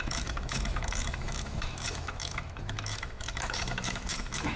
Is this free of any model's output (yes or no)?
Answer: no